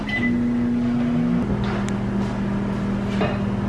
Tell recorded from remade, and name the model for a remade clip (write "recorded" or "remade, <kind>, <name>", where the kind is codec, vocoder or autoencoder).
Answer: recorded